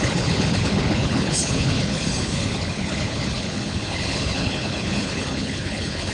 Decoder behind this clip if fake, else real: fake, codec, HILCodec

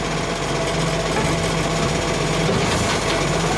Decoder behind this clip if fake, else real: real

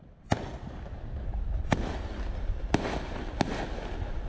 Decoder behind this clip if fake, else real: real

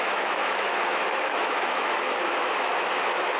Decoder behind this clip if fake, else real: fake, autoencoder, DAC-VAE